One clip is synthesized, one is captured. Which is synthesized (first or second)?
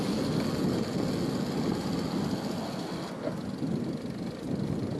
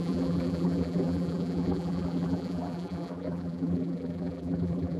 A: second